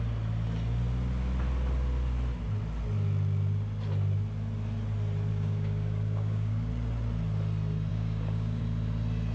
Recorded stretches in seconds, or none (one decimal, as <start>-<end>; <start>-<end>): 0.0-5.3; 6.7-7.9; 8.6-9.3